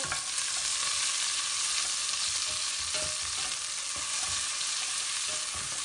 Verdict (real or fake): real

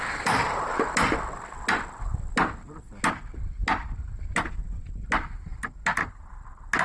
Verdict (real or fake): real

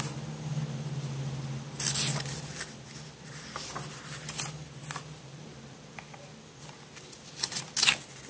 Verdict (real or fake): real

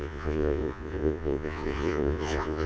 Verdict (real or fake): fake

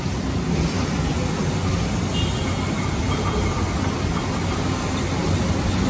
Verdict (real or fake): real